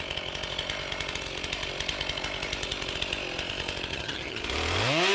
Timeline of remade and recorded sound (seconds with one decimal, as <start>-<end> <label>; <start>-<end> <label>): 0.0-3.9 recorded; 3.9-4.4 remade; 4.4-5.1 recorded